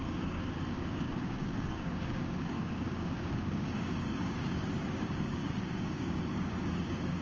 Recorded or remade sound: remade